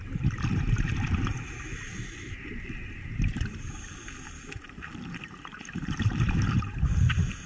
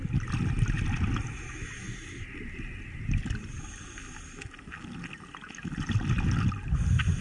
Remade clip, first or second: first